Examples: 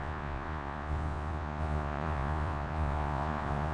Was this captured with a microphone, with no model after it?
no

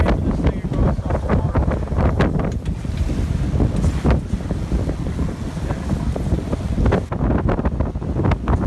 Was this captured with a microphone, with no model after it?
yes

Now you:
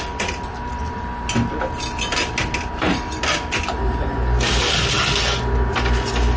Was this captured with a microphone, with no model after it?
yes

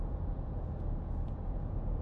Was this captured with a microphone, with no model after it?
no